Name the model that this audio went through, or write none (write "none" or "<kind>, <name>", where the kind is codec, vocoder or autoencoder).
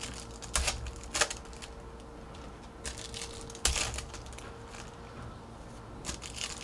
none